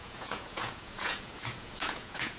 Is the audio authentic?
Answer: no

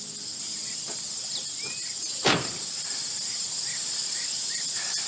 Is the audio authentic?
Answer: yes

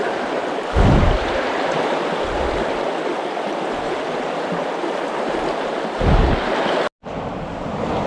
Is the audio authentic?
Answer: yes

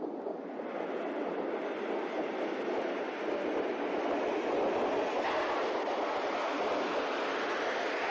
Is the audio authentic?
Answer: yes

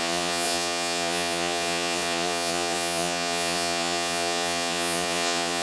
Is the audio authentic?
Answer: no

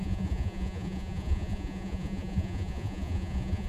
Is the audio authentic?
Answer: no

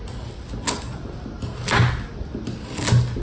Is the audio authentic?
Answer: yes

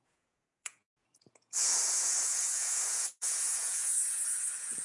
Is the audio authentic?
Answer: no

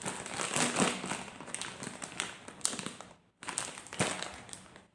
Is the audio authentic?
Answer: yes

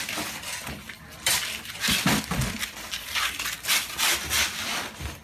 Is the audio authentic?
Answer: yes